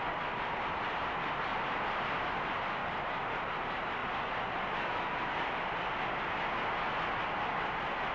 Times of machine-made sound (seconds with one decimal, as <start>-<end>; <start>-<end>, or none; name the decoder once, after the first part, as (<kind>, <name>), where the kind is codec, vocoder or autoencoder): none